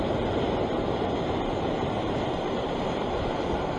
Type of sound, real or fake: fake